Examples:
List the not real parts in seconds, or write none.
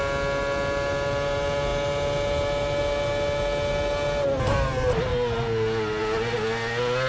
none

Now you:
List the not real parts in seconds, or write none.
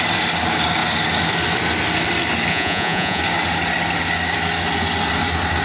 2.5-3.2 (vocoder, Vocos)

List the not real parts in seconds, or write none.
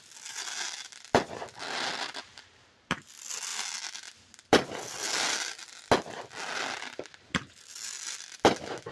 2.3-3.1 (vocoder, BigVGAN v2)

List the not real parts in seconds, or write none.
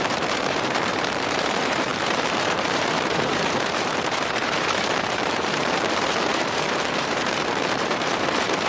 0.0-8.7 (vocoder, BigVGAN v2)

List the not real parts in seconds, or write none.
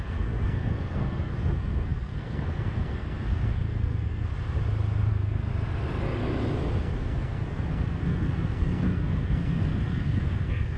0.0-4.3 (codec, SNAC); 5.1-5.5; 6.8-10.8